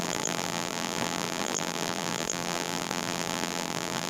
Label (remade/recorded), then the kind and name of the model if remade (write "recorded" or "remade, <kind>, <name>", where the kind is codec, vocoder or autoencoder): remade, vocoder, BigVGAN v2